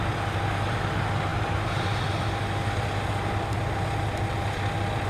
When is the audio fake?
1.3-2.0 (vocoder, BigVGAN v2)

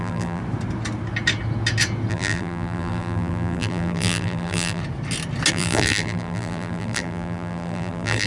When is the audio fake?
0.0-0.4 (vocoder, BigVGAN v2); 2.1-4.8; 5.5-8.3

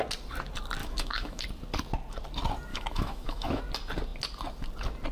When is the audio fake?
0.8-1.4 (autoencoder, DAC-VAE); 2.7-3.6

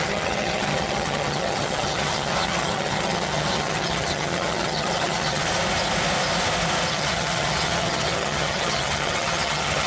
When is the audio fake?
0.0-5.5 (vocoder, HiFi-GAN); 6.9-9.9

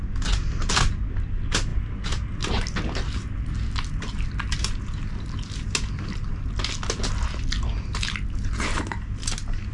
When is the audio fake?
none

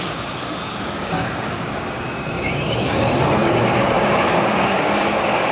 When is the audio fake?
0.0-5.5 (codec, DAC)

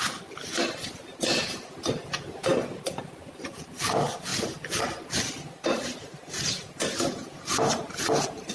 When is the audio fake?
none

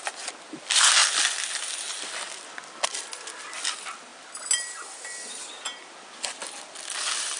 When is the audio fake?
none